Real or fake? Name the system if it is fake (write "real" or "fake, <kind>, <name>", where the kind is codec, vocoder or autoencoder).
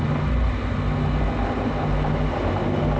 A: real